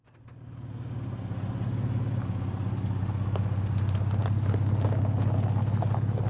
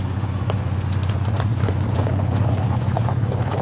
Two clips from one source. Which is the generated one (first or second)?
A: second